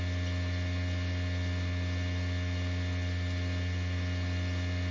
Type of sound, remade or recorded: recorded